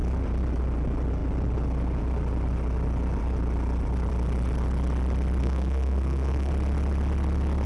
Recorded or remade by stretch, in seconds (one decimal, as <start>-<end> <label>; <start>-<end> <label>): 0.0-5.4 recorded; 5.4-6.5 remade; 6.5-7.7 recorded